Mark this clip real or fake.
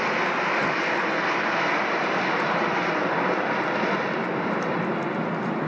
real